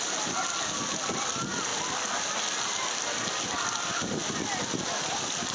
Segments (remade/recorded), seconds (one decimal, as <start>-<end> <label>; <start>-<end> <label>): 0.0-5.5 recorded